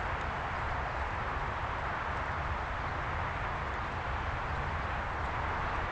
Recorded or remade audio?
recorded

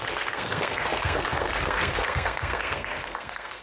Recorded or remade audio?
remade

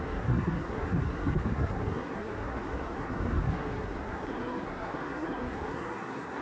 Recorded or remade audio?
remade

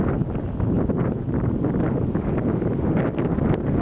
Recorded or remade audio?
recorded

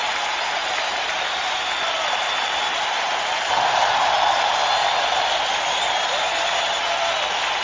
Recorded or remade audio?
recorded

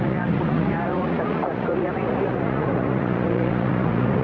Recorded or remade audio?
remade